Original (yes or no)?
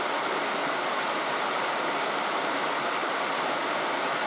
yes